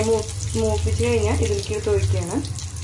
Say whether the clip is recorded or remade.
recorded